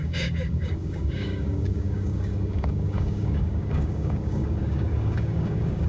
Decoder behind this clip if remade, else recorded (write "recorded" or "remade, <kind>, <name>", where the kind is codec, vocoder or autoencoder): remade, codec, DAC